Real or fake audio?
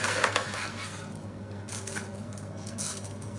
fake